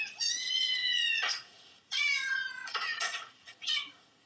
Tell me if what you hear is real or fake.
fake